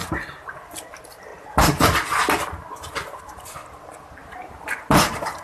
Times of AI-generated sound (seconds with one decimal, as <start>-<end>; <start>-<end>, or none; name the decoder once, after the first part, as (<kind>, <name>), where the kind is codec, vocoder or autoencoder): none